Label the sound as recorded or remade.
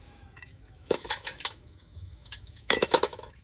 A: remade